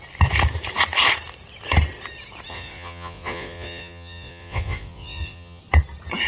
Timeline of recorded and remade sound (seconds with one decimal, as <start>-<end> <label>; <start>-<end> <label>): 0.0-2.5 recorded; 2.5-5.6 remade; 5.6-6.3 recorded